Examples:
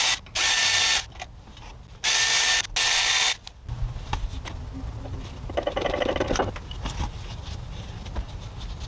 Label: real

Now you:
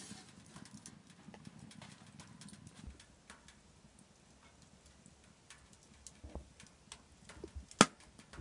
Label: real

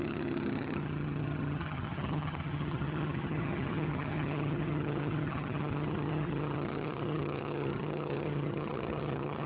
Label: fake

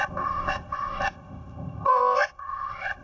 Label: fake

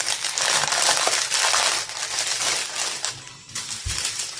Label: real